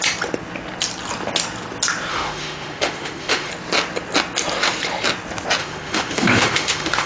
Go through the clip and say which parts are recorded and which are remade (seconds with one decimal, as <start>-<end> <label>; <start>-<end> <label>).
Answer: 0.0-2.1 recorded; 2.1-3.5 remade; 3.5-5.6 recorded; 5.6-7.1 remade